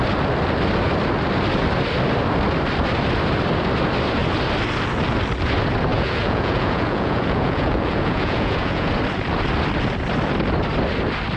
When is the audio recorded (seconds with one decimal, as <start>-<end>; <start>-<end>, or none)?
0.0-5.9; 8.9-11.4